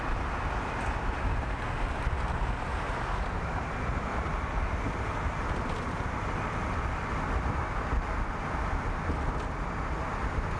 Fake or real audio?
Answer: real